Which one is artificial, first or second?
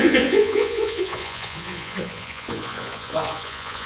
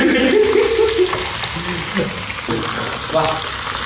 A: first